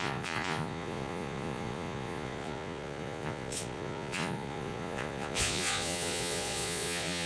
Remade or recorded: remade